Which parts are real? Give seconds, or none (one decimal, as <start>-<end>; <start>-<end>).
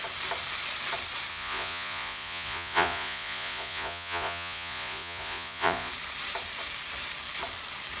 0.0-1.3; 5.9-8.0